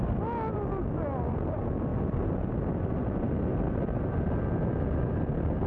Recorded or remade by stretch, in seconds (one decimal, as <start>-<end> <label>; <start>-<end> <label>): 0.0-5.7 recorded